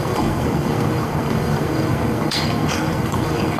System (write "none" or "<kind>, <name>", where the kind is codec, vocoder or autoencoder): codec, SNAC